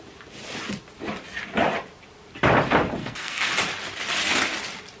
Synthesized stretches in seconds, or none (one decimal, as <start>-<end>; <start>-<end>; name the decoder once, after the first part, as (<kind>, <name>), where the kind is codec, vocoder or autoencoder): 3.0-3.5 (codec, SNAC)